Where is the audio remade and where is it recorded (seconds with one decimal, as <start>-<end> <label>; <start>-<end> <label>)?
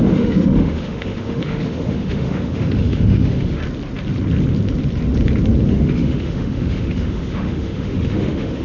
0.0-3.6 remade; 3.6-5.7 recorded; 5.7-8.6 remade